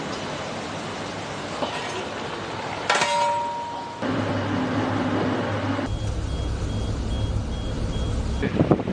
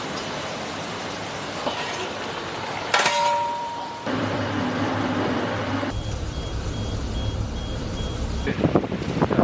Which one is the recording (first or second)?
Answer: first